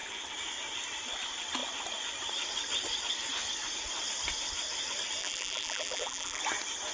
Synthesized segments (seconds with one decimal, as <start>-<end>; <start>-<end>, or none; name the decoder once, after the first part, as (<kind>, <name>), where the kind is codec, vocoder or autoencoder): 5.2-6.4 (vocoder, BigVGAN v2)